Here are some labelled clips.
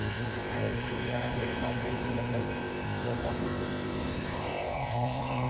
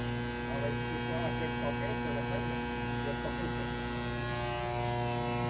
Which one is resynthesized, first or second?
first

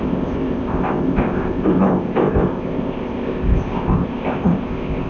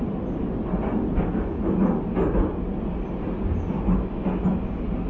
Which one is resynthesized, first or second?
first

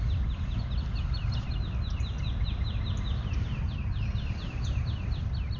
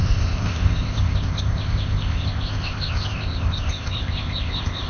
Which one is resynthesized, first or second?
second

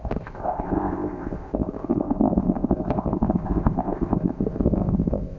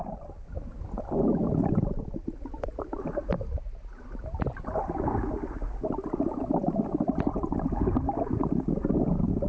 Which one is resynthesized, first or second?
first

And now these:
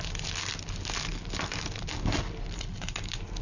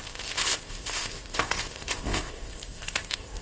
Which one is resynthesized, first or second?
second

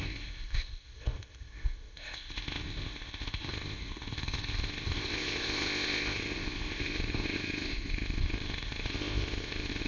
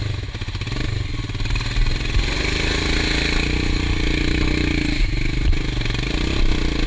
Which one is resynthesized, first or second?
first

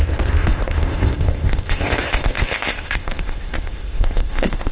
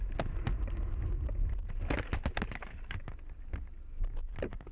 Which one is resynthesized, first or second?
first